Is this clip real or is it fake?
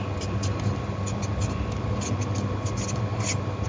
real